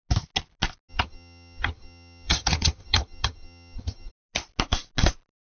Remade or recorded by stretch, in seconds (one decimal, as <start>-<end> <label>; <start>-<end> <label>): 0.0-0.9 recorded; 0.9-4.1 remade; 4.1-5.4 recorded